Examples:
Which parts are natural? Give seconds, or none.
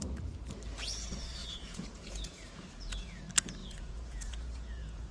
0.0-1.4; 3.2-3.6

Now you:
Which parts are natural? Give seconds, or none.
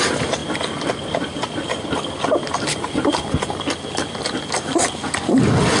0.0-5.8